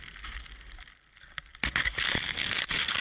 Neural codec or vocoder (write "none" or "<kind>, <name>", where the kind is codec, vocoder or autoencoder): none